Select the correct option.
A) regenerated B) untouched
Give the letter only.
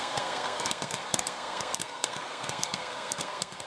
A